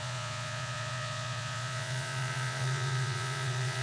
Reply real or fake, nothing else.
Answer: fake